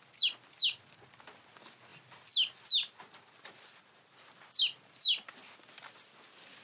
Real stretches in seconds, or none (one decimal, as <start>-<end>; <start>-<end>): 0.0-6.6